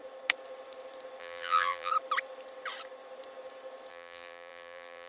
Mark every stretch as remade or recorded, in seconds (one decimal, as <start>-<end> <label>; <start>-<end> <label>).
0.0-1.2 recorded; 1.2-1.9 remade; 1.9-3.9 recorded; 3.9-5.1 remade